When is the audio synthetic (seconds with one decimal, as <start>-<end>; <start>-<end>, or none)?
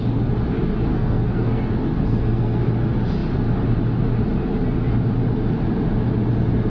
0.9-1.7; 2.1-2.6